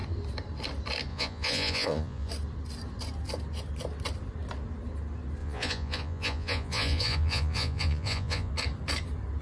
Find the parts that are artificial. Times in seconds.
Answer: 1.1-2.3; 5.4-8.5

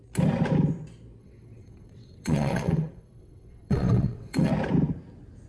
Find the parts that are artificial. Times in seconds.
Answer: 1.2-4.5

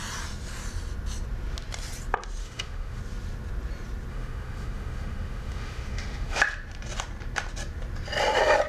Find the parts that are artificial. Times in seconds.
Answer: 2.4-3.0; 4.1-6.4

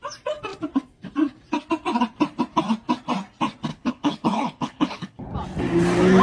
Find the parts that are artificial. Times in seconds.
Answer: 3.7-5.3

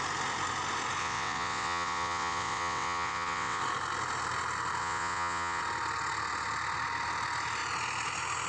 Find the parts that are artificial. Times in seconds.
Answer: 1.0-3.6; 4.8-5.6